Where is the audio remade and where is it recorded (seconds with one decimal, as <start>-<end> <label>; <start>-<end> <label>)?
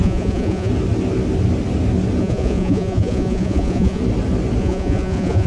0.0-0.7 remade; 0.7-2.2 recorded; 2.2-4.0 remade; 4.0-4.6 recorded; 4.6-5.5 remade